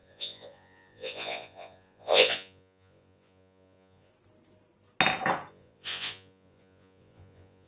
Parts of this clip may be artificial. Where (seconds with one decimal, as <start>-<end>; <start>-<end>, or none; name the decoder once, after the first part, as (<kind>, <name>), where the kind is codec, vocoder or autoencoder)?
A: 0.0-4.1 (vocoder, Vocos); 5.5-7.7